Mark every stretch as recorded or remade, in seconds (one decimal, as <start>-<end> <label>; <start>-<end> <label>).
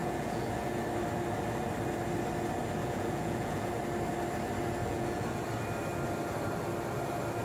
0.0-0.8 remade; 0.8-2.8 recorded; 2.8-3.7 remade; 3.7-4.8 recorded; 4.8-5.4 remade; 5.4-7.4 recorded